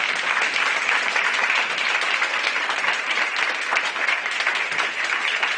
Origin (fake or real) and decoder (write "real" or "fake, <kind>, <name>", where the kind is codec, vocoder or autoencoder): fake, vocoder, BigVGAN v2